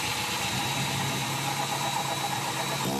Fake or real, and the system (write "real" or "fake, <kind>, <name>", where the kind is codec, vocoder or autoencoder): real